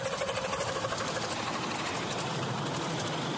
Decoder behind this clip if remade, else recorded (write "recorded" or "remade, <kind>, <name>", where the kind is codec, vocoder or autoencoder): recorded